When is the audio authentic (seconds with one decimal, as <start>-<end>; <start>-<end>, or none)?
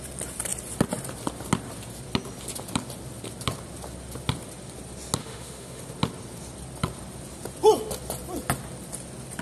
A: 0.0-5.2; 5.8-9.4